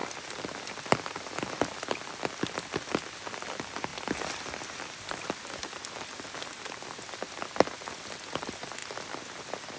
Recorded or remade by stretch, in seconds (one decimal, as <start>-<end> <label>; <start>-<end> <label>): 0.0-9.8 recorded

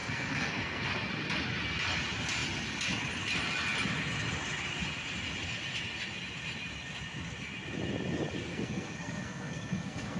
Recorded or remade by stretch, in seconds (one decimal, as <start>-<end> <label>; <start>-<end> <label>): 0.0-0.9 remade; 0.9-8.5 recorded; 8.5-10.2 remade

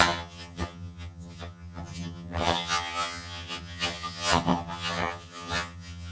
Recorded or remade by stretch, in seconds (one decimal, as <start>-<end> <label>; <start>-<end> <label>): 0.0-6.1 remade

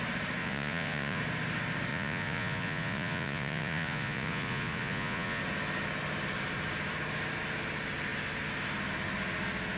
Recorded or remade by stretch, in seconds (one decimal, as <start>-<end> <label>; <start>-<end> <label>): 0.0-0.4 recorded; 0.4-1.2 remade; 1.2-1.9 recorded; 1.9-5.4 remade; 5.4-9.8 recorded

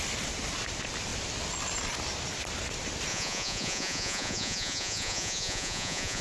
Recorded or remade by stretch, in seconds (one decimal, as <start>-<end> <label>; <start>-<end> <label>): 0.0-3.1 recorded; 3.1-6.2 remade